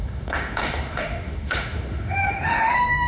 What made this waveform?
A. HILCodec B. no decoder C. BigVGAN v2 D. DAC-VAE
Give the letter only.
D